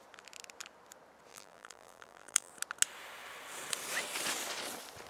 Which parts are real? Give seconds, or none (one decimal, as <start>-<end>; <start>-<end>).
0.0-1.3; 2.5-5.1

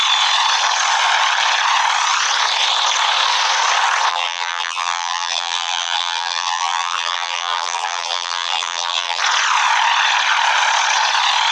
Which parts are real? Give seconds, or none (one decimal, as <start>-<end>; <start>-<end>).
0.0-4.1; 9.2-11.5

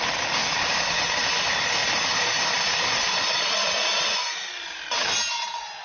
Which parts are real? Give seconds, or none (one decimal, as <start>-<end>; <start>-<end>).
0.4-1.4; 1.8-5.3

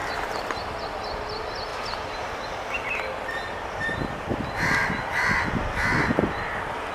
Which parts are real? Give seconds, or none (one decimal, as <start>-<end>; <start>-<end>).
0.6-1.7; 2.4-6.9

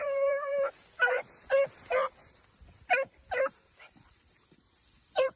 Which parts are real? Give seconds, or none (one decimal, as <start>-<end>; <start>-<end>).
0.5-3.7

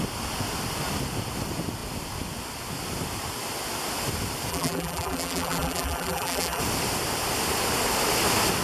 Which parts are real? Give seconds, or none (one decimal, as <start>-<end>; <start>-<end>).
0.0-4.5; 6.6-8.6

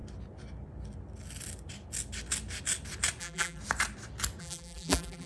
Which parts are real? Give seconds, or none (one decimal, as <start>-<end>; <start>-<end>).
0.0-3.2; 3.6-4.4

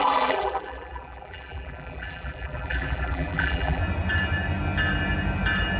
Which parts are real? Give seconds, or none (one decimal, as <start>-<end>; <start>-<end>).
3.8-5.8